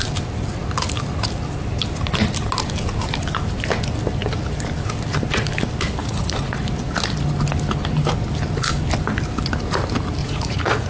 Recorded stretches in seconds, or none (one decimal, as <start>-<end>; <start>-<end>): 0.0-6.0; 6.5-10.2